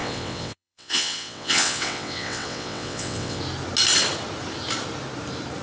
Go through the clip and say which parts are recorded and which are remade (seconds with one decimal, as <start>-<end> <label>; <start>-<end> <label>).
0.0-3.4 remade; 3.4-5.6 recorded